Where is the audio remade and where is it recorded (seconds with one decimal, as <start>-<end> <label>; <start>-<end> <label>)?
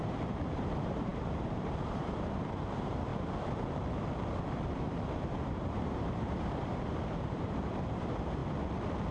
0.0-3.1 remade; 3.1-4.7 recorded; 4.7-8.4 remade; 8.4-9.1 recorded